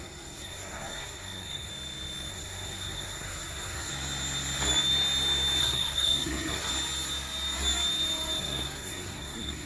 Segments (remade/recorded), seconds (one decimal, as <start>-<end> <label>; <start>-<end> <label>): 0.0-1.7 remade; 1.7-2.3 recorded; 2.3-3.9 remade; 3.9-5.6 recorded; 5.6-6.7 remade; 6.7-8.4 recorded; 8.4-9.7 remade